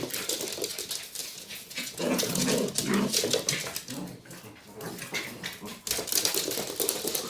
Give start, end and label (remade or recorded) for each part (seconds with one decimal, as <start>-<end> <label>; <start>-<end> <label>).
0.0-1.2 recorded; 1.2-2.7 remade; 2.7-7.3 recorded